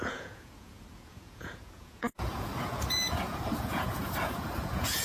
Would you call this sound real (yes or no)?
no